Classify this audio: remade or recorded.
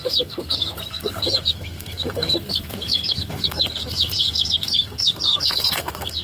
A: remade